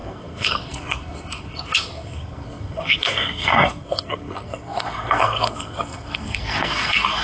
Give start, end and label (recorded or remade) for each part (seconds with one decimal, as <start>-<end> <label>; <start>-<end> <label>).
0.0-7.2 remade